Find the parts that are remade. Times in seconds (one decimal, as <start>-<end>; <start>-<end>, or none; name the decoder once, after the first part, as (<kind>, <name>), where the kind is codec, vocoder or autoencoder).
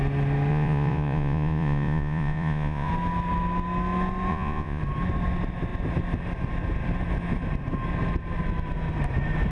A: 0.5-2.9 (vocoder, Vocos); 4.3-4.8